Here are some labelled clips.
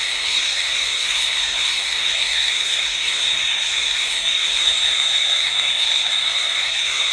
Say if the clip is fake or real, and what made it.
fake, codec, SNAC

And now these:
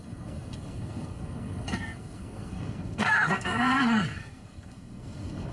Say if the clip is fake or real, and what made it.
fake, codec, SNAC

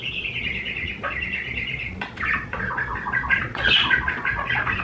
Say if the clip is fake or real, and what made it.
fake, vocoder, Vocos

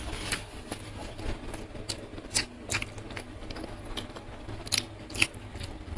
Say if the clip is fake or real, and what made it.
real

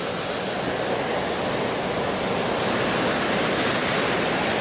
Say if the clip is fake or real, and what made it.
real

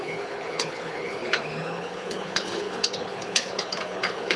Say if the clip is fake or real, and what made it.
fake, codec, HILCodec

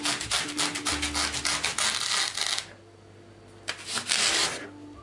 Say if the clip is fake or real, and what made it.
real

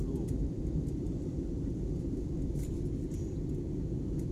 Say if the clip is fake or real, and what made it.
real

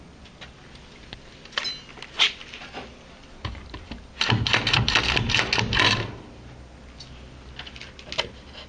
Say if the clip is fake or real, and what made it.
real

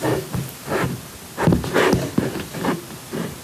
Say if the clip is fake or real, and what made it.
real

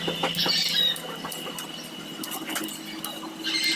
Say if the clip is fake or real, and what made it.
real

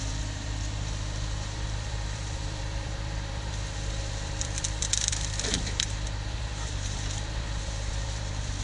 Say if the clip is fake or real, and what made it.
fake, vocoder, BigVGAN v2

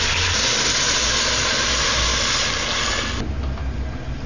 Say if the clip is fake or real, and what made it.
real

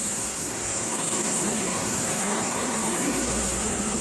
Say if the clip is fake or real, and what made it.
fake, codec, SNAC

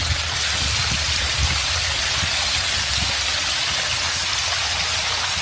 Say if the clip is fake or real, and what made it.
real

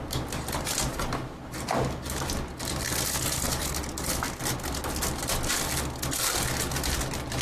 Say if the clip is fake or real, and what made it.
real